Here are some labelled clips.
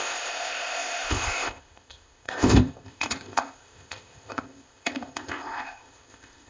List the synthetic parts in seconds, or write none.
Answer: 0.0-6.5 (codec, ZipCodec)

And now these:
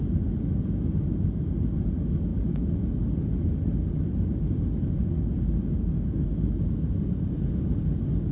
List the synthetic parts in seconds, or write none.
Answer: none

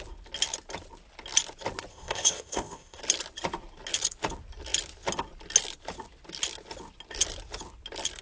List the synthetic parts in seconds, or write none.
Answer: 1.9-3.0 (codec, ZipCodec)